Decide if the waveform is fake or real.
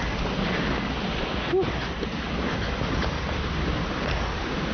real